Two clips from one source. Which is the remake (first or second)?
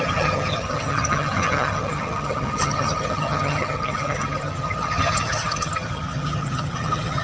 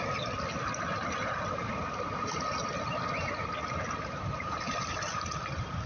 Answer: first